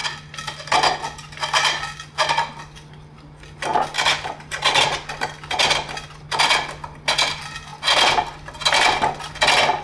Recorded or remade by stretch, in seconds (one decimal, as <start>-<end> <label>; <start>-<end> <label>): 0.0-9.8 recorded